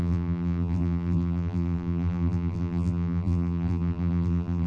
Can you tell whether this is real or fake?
fake